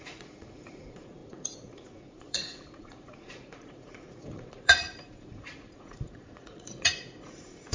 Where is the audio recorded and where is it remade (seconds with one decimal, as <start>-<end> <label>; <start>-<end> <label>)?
0.0-7.7 remade